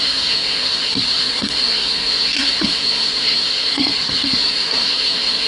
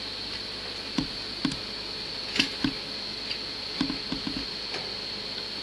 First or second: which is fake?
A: first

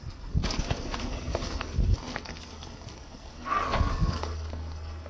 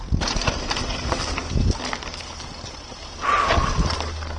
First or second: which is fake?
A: first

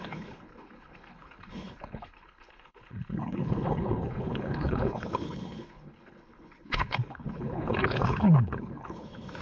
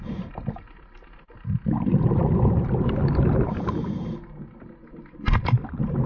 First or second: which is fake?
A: first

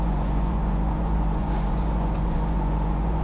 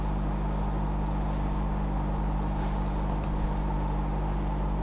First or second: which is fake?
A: first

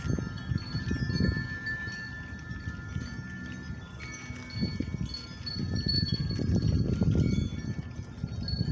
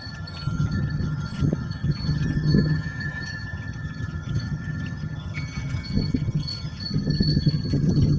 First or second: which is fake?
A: second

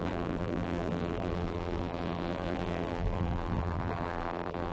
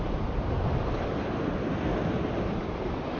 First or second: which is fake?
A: first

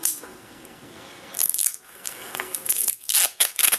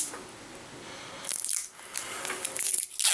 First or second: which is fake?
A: first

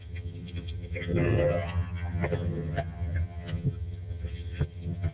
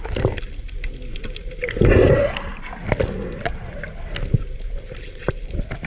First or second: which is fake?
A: first